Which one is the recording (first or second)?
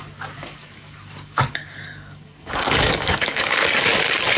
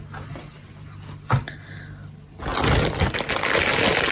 second